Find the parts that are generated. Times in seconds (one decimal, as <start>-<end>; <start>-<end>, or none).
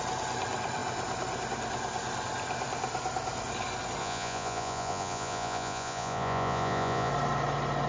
4.0-7.1